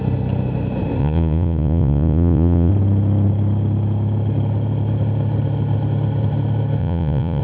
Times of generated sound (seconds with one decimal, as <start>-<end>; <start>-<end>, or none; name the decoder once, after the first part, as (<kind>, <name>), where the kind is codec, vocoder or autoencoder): 1.0-2.7 (vocoder, Vocos); 6.8-7.4